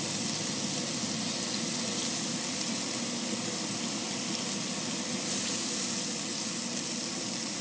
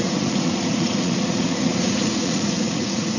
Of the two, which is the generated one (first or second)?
second